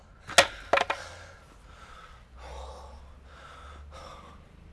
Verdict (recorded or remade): recorded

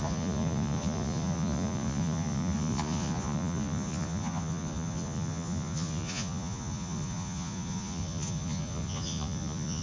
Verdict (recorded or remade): remade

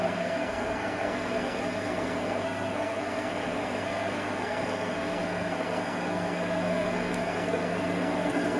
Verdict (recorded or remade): remade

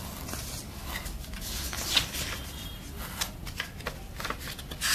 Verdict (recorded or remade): recorded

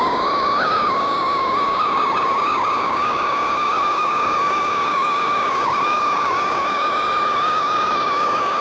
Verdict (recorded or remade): remade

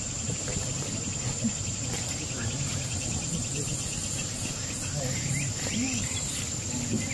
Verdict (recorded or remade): remade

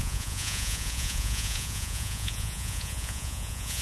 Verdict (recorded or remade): remade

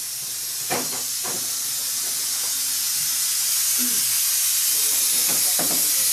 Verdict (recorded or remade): recorded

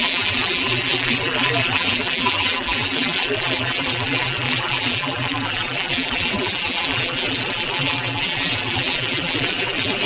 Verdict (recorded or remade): remade